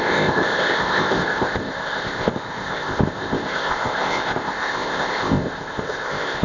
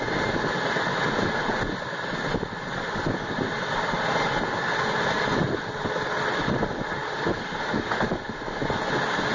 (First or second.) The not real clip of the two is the first